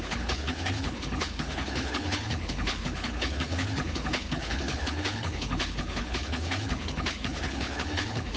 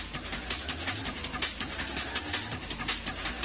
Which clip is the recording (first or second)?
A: second